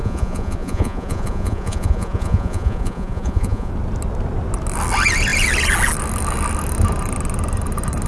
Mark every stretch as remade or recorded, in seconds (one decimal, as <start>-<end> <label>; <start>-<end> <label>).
0.0-3.7 remade; 3.7-8.1 recorded